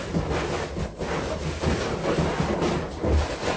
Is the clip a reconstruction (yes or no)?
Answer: no